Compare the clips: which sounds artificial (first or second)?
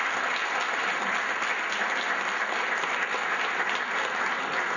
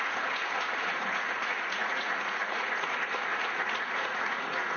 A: second